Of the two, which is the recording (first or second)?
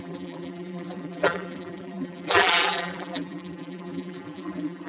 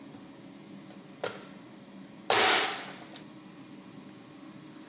second